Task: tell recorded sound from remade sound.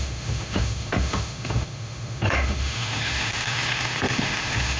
remade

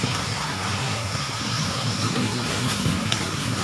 remade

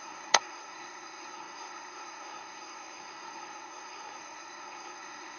remade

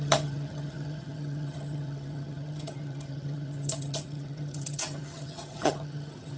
remade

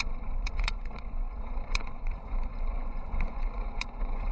remade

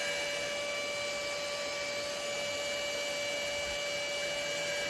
recorded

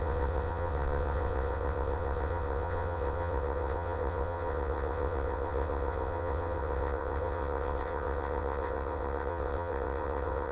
remade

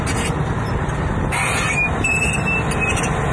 recorded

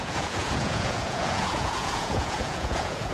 remade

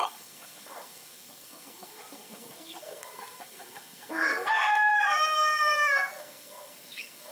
remade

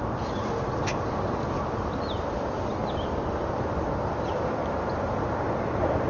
recorded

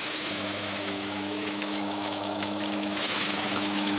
remade